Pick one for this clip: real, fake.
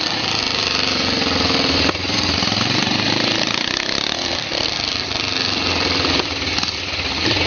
real